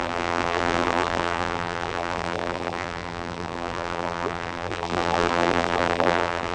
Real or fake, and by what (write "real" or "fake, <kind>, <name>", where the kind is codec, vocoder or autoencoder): fake, vocoder, BigVGAN v2